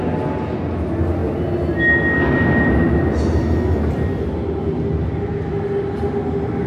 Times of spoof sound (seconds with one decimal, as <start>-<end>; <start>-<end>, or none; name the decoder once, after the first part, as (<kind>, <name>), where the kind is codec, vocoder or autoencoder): none